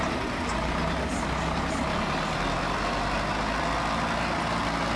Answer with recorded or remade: recorded